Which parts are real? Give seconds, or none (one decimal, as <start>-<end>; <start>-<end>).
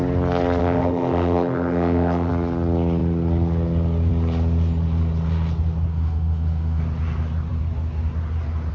0.0-0.6; 2.3-5.9; 6.8-8.7